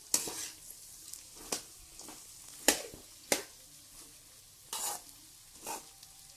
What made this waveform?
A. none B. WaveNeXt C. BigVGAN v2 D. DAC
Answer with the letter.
A